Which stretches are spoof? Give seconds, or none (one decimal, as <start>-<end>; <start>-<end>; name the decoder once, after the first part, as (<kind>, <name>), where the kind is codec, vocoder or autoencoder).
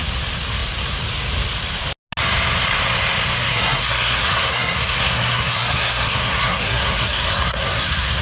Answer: 3.4-8.2 (codec, SNAC)